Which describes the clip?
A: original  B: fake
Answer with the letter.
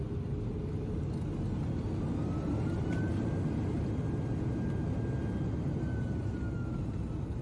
A